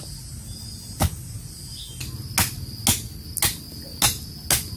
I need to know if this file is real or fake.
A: real